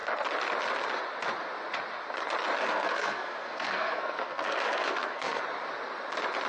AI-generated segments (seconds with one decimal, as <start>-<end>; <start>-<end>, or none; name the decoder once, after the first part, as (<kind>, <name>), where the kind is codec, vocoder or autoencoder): 2.6-5.4 (codec, SNAC)